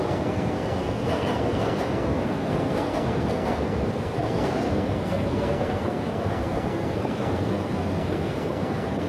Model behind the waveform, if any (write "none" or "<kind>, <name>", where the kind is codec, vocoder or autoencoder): codec, SNAC